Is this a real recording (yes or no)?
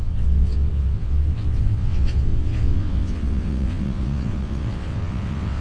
no